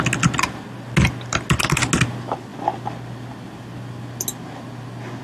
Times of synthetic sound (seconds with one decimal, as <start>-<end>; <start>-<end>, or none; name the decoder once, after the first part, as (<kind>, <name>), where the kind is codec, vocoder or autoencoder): none